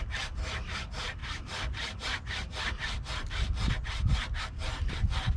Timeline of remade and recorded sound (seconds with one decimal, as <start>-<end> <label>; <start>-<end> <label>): 0.0-5.4 recorded